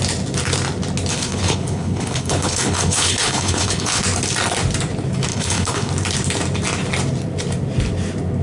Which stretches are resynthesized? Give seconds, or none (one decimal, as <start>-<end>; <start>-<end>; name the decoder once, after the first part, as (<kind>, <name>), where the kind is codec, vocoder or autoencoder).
1.1-4.0 (codec, HILCodec); 5.3-5.9